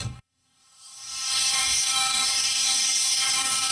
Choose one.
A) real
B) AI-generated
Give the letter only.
B